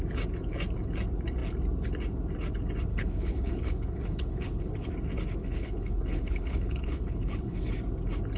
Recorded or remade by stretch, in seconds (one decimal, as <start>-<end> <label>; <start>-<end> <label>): 0.0-2.9 recorded; 2.9-4.9 remade; 4.9-5.4 recorded; 5.4-7.7 remade; 7.7-8.4 recorded

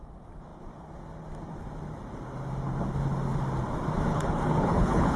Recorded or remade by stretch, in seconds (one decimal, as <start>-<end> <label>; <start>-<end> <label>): 0.0-4.1 recorded; 4.1-5.2 remade

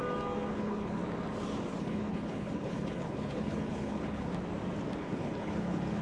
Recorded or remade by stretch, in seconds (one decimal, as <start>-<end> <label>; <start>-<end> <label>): 0.0-0.5 recorded; 0.5-1.0 remade; 1.0-1.7 recorded; 1.7-4.3 remade; 4.3-5.0 recorded; 5.0-6.0 remade

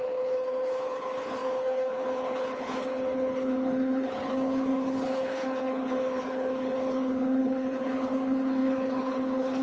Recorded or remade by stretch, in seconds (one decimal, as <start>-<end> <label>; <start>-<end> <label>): 0.0-9.6 remade

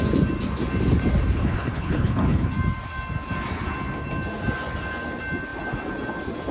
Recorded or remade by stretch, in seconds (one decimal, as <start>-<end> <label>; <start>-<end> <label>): 0.0-1.4 recorded; 1.4-2.5 remade; 2.5-6.5 recorded

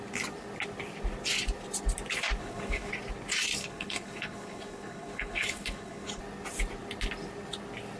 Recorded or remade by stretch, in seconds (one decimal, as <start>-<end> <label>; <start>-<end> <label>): 0.0-2.4 recorded; 2.4-2.9 remade; 2.9-3.6 recorded; 3.6-6.2 remade; 6.2-8.0 recorded

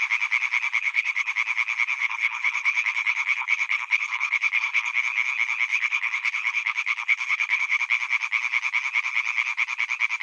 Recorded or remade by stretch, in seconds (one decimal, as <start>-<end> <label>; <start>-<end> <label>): 0.0-0.8 recorded; 0.8-1.3 remade; 1.3-2.0 recorded; 2.0-4.9 remade; 4.9-5.7 recorded; 5.7-7.8 remade; 7.8-10.2 recorded

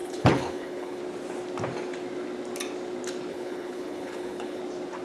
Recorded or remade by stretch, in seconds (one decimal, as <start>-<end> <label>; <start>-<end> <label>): 0.0-1.0 remade; 1.0-3.3 recorded; 3.3-4.6 remade; 4.6-5.0 recorded